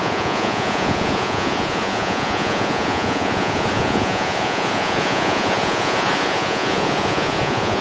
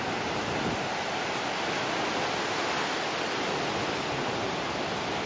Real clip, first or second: second